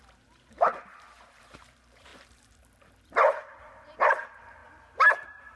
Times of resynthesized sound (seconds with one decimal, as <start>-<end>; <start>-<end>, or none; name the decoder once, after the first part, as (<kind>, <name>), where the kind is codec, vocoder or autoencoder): 0.0-4.6 (vocoder, BigVGAN v2)